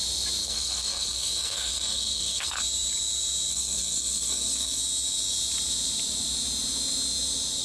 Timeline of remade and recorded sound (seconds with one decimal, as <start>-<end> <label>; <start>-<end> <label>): 0.0-0.4 recorded; 0.4-2.6 remade; 2.6-3.5 recorded; 3.5-4.8 remade; 4.8-7.6 recorded